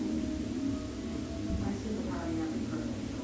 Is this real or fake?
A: real